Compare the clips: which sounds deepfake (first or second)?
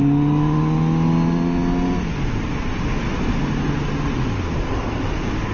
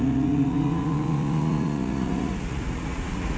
second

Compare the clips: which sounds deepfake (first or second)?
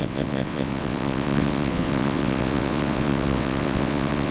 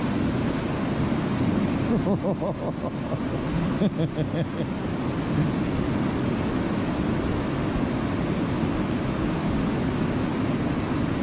first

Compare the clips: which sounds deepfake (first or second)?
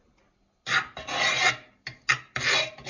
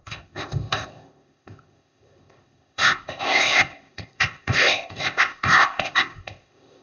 second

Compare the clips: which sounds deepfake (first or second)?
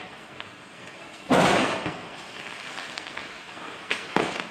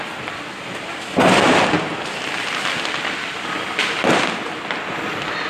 first